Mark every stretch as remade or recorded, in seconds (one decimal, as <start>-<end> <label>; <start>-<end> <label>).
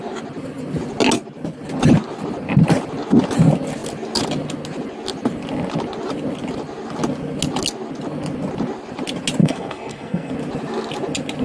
0.0-9.4 recorded; 9.4-10.3 remade; 10.3-11.4 recorded